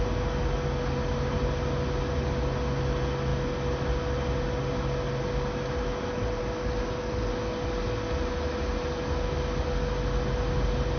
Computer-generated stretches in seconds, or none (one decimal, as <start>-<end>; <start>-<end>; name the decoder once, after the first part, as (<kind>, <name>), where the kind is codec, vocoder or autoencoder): none